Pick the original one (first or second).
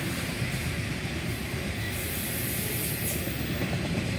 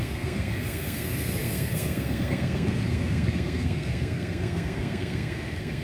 first